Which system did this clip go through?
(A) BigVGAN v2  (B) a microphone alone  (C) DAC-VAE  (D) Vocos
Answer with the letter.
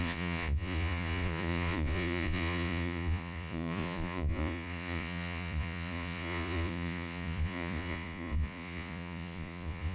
D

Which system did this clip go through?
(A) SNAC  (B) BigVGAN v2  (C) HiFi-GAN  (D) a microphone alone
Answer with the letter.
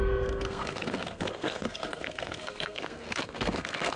A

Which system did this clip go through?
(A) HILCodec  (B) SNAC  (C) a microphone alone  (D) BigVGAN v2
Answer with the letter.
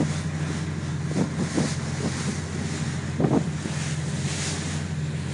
C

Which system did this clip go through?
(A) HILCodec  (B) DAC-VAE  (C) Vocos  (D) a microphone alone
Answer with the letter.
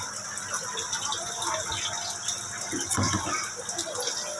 D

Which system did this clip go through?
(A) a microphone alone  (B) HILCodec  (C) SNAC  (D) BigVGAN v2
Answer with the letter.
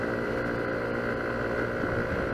A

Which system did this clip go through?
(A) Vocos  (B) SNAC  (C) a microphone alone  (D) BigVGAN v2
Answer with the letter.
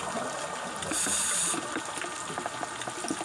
C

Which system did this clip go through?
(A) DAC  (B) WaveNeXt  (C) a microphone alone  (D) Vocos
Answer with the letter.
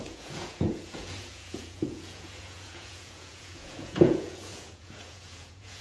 D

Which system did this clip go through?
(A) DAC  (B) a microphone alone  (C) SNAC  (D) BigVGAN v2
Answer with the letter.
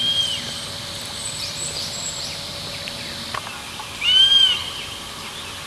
D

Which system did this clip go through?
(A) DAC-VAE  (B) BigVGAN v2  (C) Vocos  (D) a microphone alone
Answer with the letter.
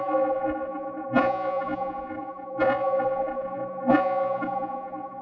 C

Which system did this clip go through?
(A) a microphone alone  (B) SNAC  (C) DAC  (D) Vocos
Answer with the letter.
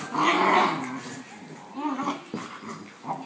A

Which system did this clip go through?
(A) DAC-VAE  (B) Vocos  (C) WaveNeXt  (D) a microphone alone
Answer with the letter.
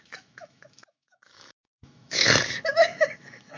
A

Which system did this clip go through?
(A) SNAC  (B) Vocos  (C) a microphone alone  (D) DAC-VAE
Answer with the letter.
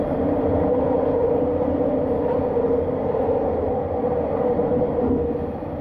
C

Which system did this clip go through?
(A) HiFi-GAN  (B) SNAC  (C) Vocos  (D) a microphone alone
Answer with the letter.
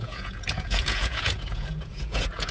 C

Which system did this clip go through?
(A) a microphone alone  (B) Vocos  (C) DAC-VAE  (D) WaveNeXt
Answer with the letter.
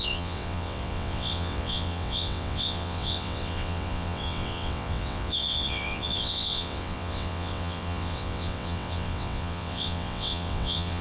D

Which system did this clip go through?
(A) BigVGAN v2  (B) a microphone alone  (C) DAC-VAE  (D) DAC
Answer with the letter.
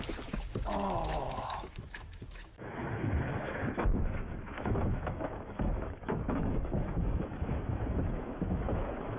C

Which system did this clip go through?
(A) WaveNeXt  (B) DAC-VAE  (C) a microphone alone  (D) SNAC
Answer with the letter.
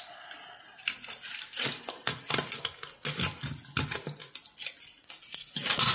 C